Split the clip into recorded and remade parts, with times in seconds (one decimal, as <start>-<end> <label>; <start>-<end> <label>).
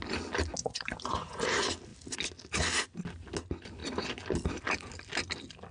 0.0-0.6 recorded; 0.6-1.4 remade; 1.4-5.7 recorded